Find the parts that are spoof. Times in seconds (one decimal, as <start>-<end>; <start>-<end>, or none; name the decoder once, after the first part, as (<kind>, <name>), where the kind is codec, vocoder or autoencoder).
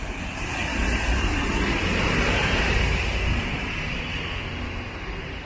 0.7-4.0 (vocoder, BigVGAN v2)